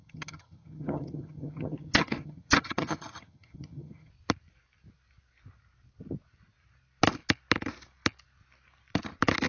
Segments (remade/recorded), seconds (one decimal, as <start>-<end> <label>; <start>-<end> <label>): 0.0-4.1 remade; 4.1-9.5 recorded